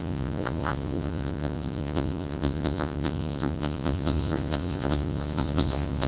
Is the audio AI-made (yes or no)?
yes